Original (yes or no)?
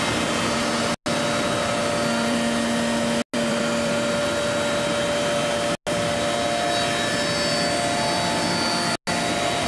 yes